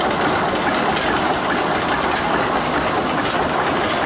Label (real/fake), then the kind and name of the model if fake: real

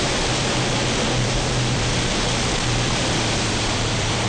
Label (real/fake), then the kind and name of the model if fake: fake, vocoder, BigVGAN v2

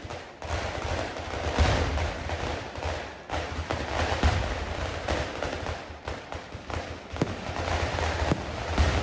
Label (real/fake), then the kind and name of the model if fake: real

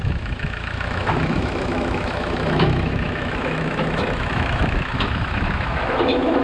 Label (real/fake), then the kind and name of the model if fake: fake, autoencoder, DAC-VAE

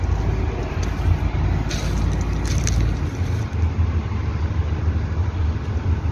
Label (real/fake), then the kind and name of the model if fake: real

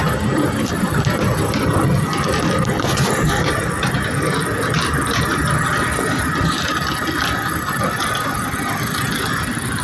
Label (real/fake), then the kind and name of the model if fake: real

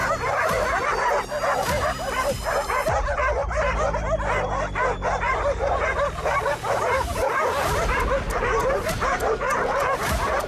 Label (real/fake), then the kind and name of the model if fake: real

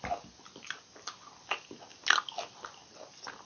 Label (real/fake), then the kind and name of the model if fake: real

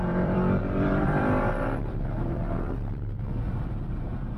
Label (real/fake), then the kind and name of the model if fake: fake, vocoder, BigVGAN v2